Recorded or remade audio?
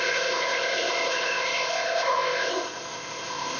remade